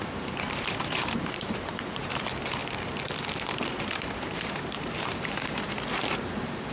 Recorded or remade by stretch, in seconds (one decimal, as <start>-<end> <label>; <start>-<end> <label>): 0.0-2.6 remade; 2.6-3.7 recorded; 3.7-6.7 remade